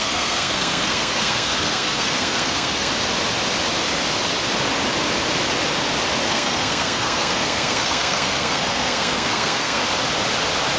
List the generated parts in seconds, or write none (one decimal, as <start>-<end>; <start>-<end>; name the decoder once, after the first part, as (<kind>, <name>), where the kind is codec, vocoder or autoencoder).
0.0-2.9 (codec, SNAC); 6.3-9.8